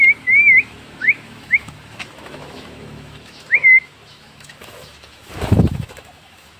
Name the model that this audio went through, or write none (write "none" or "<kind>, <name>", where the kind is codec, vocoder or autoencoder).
autoencoder, DAC-VAE